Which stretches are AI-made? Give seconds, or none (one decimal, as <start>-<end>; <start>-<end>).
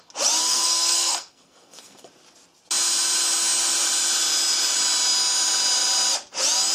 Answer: 0.4-2.1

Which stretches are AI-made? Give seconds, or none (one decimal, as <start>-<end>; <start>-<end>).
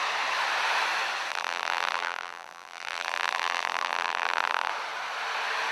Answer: 1.3-4.7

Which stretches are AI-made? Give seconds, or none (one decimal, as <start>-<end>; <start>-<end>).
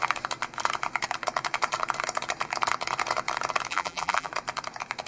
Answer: 3.7-4.3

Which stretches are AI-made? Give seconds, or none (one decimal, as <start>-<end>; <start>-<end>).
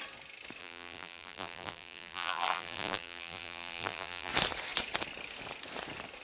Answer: 0.6-4.3